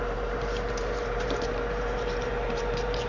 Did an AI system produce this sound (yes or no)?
yes